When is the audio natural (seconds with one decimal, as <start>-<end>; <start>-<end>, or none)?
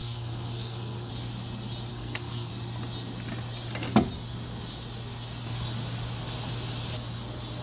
1.1-1.9; 2.5-7.6